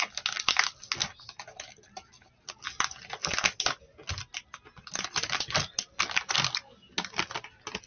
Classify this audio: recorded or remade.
recorded